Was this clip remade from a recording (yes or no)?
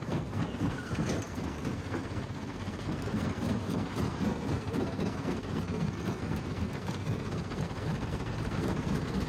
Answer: yes